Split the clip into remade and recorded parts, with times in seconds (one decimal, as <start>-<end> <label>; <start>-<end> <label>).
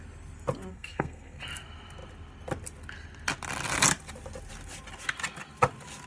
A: 0.0-0.7 recorded; 0.7-1.4 remade; 1.4-6.1 recorded